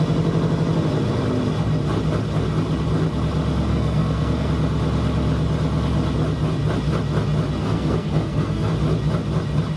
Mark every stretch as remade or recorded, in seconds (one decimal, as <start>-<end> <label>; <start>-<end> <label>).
0.0-3.7 recorded; 3.7-4.5 remade; 4.5-7.6 recorded; 7.6-8.7 remade; 8.7-9.8 recorded